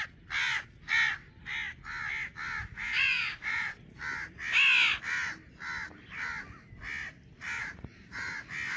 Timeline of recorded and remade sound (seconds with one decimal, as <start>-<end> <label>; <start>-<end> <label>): 0.0-2.6 recorded; 2.6-4.0 remade; 4.0-7.6 recorded; 7.6-8.3 remade; 8.3-8.8 recorded

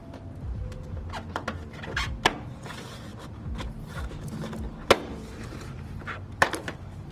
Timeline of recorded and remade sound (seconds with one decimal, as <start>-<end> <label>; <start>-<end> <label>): 0.0-1.0 remade; 1.0-3.1 recorded; 3.1-4.3 remade; 4.3-4.8 recorded; 4.8-7.1 remade

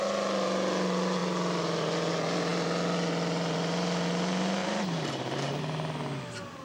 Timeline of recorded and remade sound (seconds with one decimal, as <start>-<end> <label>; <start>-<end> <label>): 0.0-4.6 recorded; 4.6-5.6 remade; 5.6-6.6 recorded

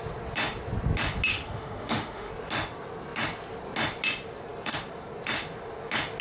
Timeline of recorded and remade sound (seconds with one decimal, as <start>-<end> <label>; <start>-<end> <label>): 0.0-1.3 recorded; 1.3-2.3 remade; 2.3-6.2 recorded

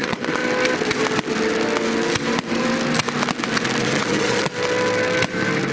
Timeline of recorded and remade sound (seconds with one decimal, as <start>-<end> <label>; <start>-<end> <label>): 0.0-0.4 remade; 0.4-3.8 recorded; 3.8-4.5 remade; 4.5-5.7 recorded

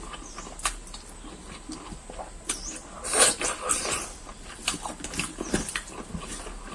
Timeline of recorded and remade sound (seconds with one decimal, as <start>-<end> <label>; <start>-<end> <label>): 0.0-6.7 recorded